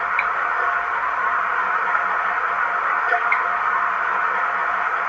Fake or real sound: real